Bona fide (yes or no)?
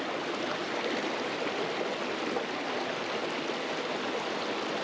yes